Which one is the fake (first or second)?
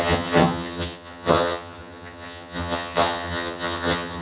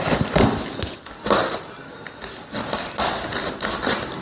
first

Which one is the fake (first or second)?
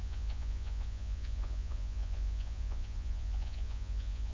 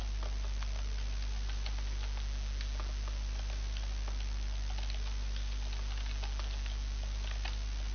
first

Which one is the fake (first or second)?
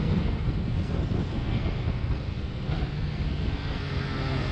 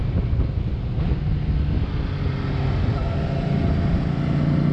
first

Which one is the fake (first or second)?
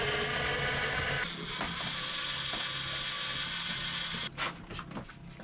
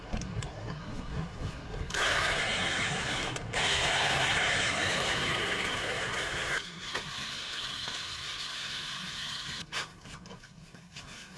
second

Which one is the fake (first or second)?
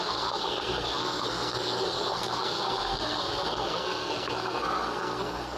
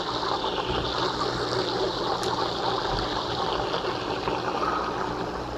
first